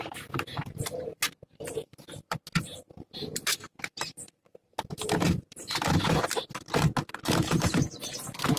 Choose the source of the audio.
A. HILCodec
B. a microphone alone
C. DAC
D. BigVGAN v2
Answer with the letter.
D